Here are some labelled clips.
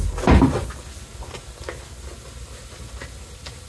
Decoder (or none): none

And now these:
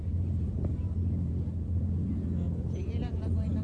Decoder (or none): vocoder, BigVGAN v2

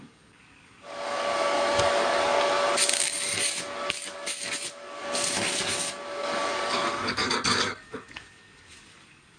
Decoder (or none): codec, DAC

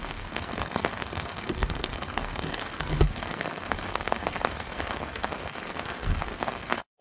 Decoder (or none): codec, SNAC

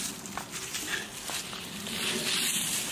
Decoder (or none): none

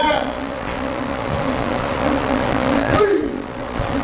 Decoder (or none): vocoder, Vocos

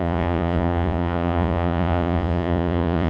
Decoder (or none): vocoder, Vocos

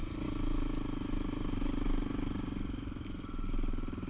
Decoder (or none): none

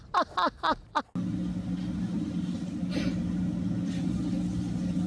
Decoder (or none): none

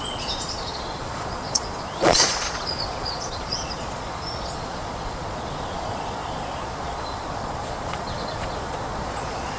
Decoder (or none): vocoder, Vocos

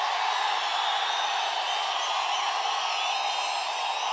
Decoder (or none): none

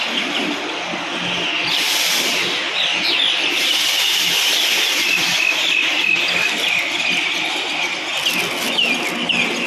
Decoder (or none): none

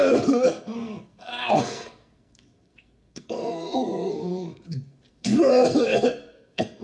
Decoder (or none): codec, SNAC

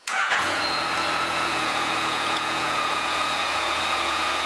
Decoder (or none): vocoder, Vocos